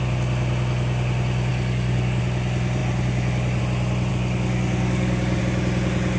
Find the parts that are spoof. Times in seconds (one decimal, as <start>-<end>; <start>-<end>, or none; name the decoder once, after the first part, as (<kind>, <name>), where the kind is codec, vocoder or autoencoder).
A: 1.5-2.2 (codec, DAC); 4.1-5.4